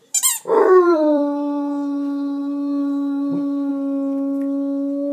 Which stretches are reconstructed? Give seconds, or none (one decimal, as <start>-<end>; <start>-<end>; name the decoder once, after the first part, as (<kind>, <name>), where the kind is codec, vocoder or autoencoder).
0.6-3.7 (vocoder, BigVGAN v2)